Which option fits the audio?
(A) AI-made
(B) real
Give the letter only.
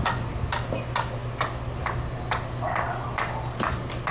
B